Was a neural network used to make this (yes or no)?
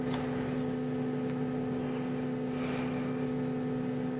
no